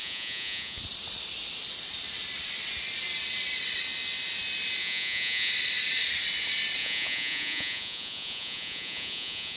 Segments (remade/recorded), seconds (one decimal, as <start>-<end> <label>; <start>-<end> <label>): 0.0-0.8 remade; 0.8-4.8 recorded; 4.8-5.5 remade; 5.5-6.8 recorded; 6.8-9.6 remade